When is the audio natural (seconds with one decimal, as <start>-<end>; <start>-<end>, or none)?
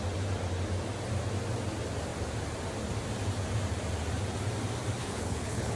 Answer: 0.0-5.0